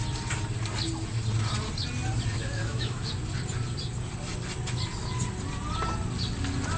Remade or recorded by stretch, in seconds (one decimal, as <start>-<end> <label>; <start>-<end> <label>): 0.0-2.3 recorded; 2.3-3.1 remade; 3.1-6.8 recorded